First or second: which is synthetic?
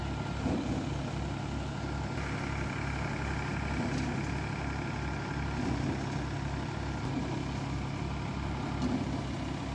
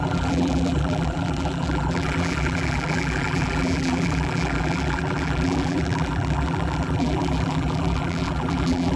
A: second